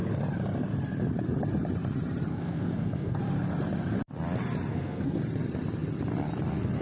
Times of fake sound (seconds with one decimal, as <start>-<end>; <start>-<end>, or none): 2.3-3.2; 4.7-5.2